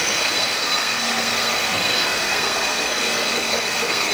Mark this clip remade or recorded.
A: remade